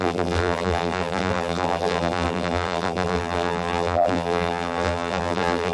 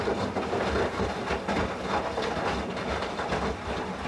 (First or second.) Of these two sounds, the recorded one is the second